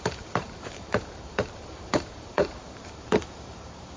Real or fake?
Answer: fake